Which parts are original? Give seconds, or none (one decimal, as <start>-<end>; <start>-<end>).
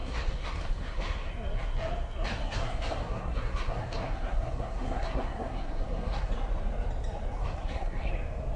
1.3-2.3; 6.3-7.4; 8.1-8.6